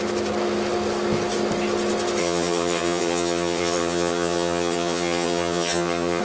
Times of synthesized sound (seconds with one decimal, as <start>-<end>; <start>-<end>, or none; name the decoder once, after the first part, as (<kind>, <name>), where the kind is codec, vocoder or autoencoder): 2.2-6.2 (vocoder, HiFi-GAN)